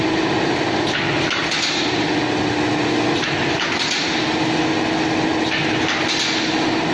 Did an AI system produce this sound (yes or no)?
no